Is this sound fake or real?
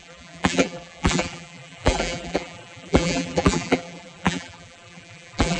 fake